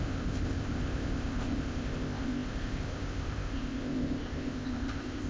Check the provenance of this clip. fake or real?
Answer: fake